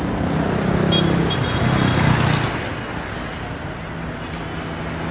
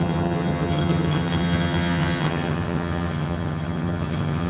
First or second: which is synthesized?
second